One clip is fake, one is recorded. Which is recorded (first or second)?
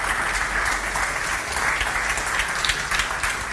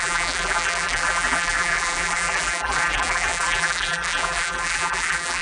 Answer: first